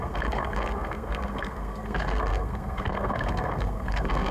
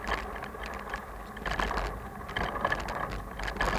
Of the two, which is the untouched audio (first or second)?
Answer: second